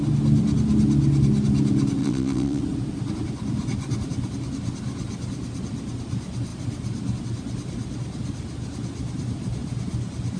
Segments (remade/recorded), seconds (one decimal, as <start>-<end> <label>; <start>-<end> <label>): 0.0-2.0 recorded; 2.0-2.6 remade; 2.6-10.4 recorded